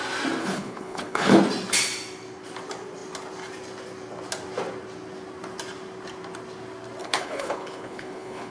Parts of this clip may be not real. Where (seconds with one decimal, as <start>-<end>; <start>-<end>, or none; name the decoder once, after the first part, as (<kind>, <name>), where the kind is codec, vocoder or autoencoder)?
0.4-1.4 (codec, HILCodec); 7.0-8.5